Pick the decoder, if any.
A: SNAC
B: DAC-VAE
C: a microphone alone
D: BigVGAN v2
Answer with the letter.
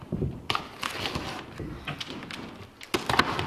C